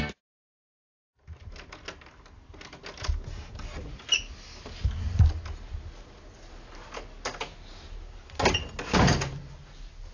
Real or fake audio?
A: real